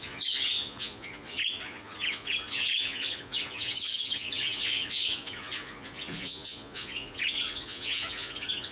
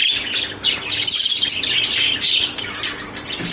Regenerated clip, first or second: first